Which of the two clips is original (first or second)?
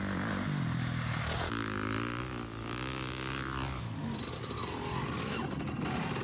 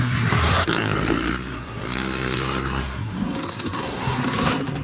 first